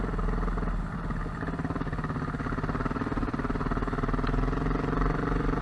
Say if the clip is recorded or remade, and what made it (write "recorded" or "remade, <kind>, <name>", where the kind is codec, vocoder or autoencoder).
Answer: recorded